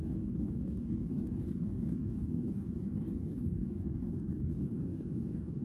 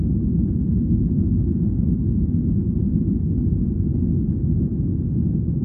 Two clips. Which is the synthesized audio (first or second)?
first